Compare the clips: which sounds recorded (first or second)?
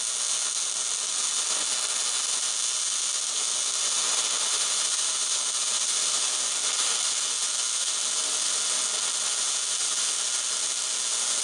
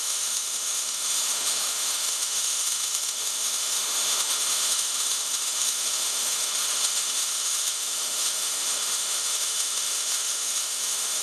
first